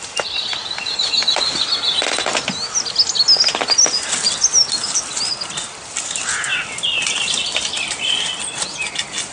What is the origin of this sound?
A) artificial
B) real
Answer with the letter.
B